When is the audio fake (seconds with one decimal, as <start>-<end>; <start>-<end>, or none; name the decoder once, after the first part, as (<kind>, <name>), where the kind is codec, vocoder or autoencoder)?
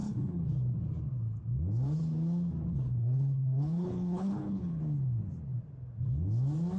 0.0-0.5 (codec, HILCodec); 2.7-4.8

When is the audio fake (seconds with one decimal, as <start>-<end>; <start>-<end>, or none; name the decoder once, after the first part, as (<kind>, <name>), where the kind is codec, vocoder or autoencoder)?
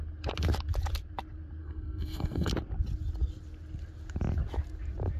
1.6-2.5 (codec, SNAC)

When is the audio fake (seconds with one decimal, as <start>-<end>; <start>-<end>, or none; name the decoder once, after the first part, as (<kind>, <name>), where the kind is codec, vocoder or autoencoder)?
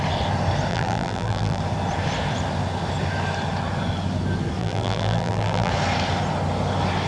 0.7-1.6 (vocoder, BigVGAN v2); 4.6-5.7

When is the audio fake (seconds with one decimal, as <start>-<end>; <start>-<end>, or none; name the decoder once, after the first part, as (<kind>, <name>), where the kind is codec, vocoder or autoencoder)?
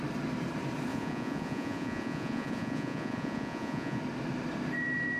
0.9-4.0 (vocoder, Vocos)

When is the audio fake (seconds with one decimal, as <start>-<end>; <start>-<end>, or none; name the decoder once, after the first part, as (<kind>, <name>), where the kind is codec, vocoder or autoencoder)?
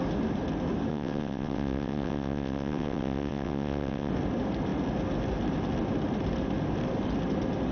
0.9-4.1 (vocoder, WaveNeXt)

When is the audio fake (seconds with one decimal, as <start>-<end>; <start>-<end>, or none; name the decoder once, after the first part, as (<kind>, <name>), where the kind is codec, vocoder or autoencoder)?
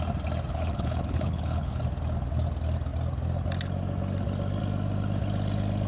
0.5-1.8 (codec, HILCodec)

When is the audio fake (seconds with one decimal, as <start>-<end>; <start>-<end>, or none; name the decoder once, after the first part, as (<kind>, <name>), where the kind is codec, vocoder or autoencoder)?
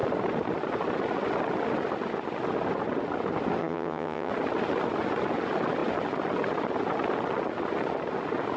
3.6-4.3 (vocoder, HiFi-GAN)